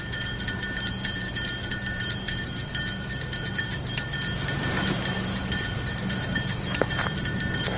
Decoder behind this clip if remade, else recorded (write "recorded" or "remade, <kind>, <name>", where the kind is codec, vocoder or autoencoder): remade, vocoder, BigVGAN v2